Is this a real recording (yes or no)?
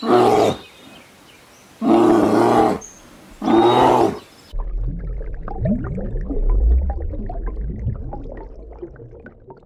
yes